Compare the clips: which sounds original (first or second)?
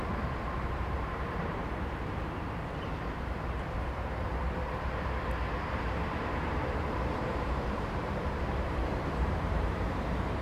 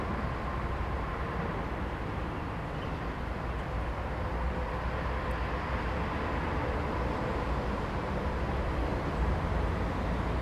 second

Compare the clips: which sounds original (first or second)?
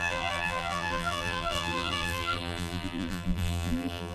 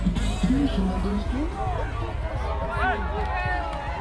second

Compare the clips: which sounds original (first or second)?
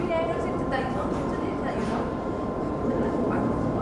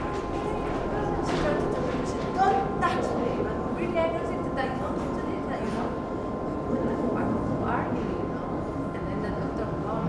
second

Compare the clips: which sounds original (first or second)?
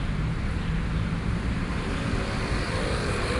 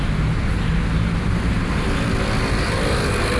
second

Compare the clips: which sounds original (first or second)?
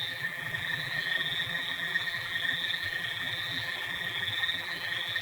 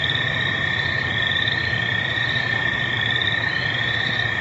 second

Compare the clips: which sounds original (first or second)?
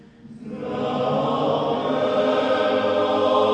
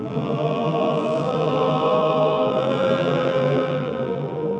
first